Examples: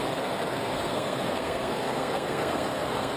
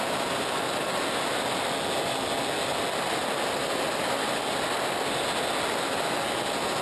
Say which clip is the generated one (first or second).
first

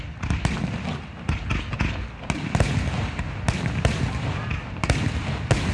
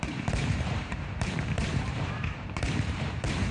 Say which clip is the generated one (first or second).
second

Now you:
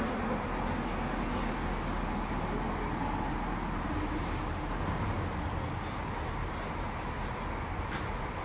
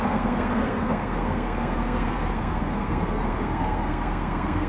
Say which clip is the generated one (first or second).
second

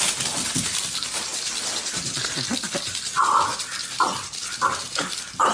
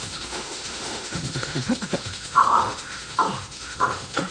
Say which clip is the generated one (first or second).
second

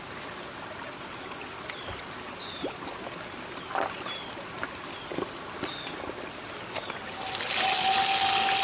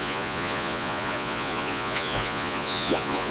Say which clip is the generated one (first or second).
second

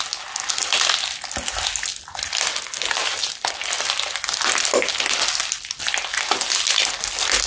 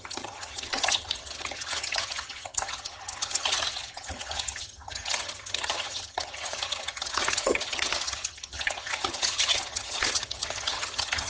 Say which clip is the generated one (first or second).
second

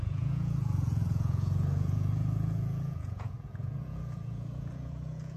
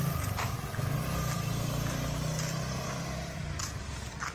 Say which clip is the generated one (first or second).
first